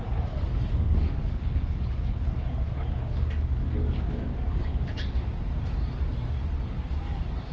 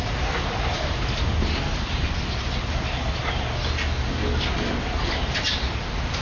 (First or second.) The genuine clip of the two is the second